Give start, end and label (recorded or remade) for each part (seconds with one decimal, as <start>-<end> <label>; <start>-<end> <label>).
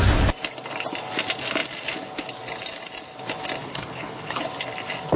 0.0-3.6 recorded; 3.6-4.4 remade; 4.4-5.2 recorded